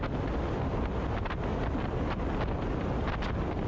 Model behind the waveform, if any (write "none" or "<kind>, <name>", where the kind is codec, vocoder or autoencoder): none